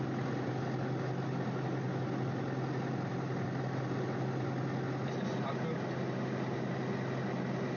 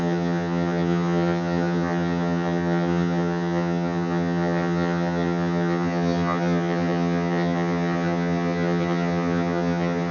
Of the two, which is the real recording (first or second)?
first